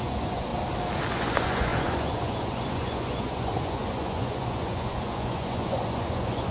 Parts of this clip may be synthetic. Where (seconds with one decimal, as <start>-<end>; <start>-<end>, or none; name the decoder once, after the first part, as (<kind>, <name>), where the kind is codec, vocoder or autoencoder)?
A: 0.0-0.5 (vocoder, Vocos); 1.1-6.5